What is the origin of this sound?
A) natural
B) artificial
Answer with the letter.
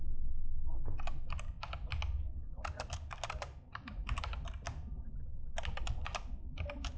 A